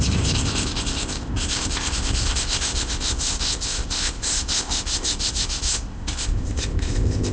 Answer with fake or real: fake